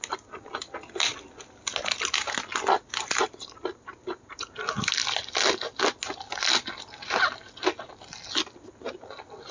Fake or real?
real